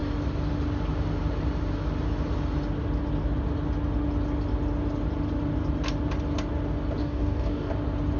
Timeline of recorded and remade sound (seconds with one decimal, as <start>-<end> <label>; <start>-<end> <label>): 0.0-7.0 recorded; 7.0-7.7 remade; 7.7-8.2 recorded